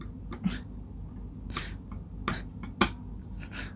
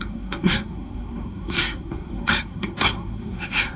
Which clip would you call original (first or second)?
first